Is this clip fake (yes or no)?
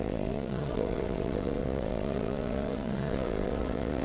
yes